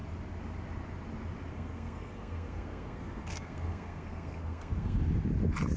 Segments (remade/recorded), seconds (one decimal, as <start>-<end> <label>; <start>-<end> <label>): 0.0-1.5 recorded; 1.5-5.0 remade; 5.0-5.8 recorded